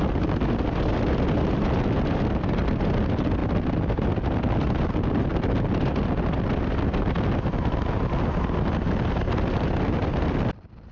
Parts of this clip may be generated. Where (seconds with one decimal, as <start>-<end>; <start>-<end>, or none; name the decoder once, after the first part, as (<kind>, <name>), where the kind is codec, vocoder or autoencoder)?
none